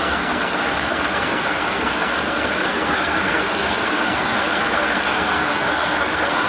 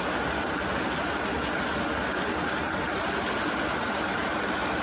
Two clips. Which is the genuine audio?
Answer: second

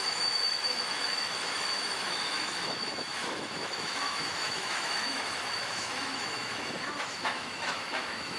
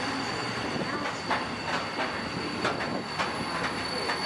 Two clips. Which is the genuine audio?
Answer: second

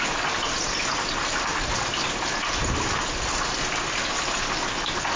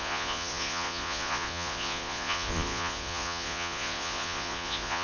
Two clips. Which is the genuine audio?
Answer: first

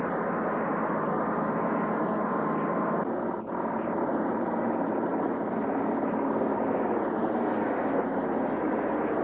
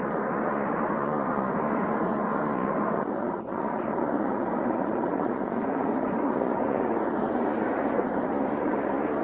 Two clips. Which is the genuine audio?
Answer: first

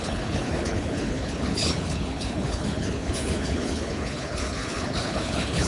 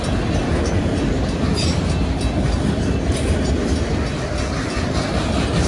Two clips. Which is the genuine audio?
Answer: second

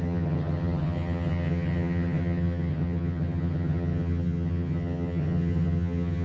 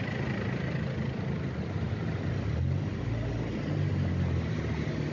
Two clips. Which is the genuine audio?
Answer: second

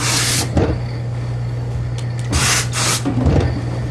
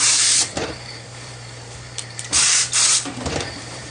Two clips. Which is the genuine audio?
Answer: first